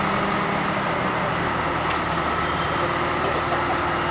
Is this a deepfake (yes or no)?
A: no